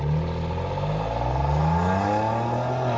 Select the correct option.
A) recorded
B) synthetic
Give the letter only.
A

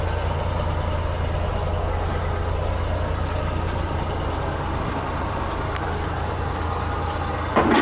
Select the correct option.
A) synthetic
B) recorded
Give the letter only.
B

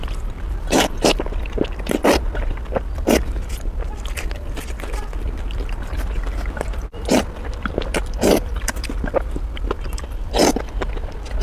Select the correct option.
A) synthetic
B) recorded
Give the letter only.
A